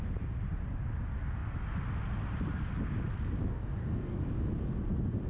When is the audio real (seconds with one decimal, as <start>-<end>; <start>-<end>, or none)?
0.0-3.5; 4.2-5.3

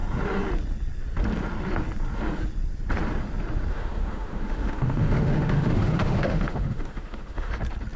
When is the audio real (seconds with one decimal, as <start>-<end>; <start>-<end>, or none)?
0.0-3.7; 7.5-8.0